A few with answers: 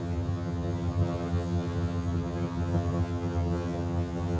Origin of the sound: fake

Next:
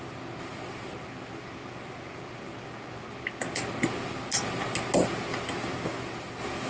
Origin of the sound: real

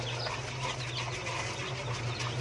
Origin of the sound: real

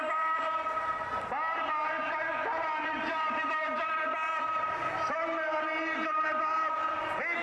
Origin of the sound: real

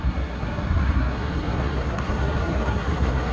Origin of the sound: fake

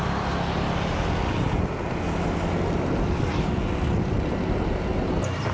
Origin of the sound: real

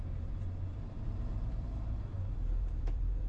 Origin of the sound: fake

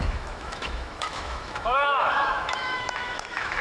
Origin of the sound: fake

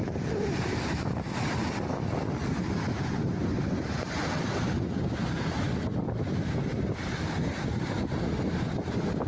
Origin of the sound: real